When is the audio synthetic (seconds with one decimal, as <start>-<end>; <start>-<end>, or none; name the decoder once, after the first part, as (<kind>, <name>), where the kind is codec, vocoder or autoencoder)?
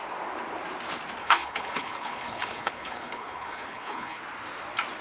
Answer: 1.2-4.2 (codec, HILCodec)